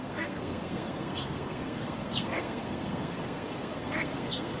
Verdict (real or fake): fake